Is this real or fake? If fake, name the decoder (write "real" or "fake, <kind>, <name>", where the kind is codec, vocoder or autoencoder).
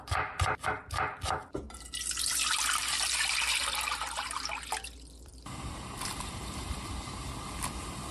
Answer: real